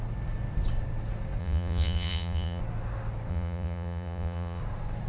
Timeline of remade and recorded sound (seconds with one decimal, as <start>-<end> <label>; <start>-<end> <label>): 0.0-1.4 recorded; 1.4-2.6 remade; 2.6-3.3 recorded; 3.3-4.6 remade; 4.6-5.1 recorded